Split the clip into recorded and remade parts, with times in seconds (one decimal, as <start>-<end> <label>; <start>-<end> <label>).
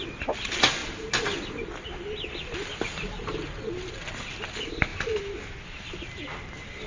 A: 0.0-6.9 recorded